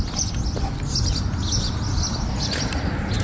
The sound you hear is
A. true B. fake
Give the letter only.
A